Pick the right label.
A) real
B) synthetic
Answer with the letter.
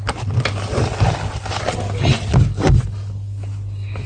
A